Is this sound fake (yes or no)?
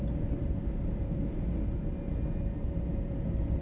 no